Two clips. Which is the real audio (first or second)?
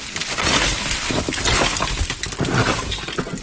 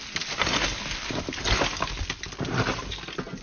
second